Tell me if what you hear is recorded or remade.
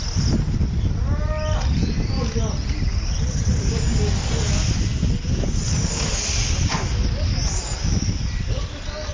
recorded